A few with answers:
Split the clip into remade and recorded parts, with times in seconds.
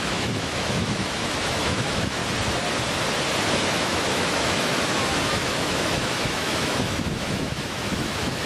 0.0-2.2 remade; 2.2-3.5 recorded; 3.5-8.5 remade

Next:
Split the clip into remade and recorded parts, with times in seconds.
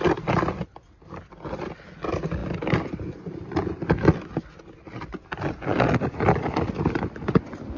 0.0-7.8 recorded